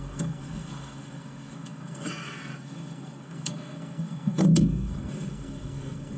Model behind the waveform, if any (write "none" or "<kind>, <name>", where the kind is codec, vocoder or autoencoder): codec, SNAC